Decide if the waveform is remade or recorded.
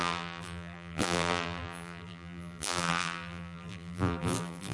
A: remade